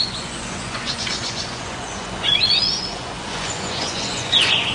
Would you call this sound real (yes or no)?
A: no